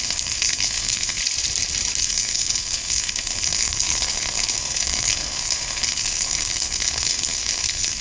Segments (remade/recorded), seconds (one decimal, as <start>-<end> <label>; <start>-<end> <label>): 0.0-1.2 remade; 1.2-2.0 recorded; 2.0-8.0 remade